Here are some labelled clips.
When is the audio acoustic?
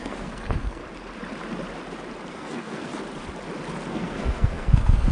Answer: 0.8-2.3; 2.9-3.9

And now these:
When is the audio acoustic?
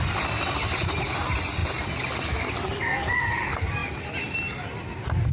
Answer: 0.0-5.3